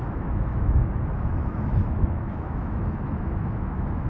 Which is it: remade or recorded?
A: remade